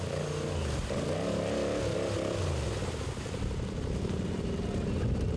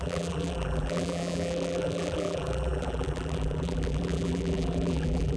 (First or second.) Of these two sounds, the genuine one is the first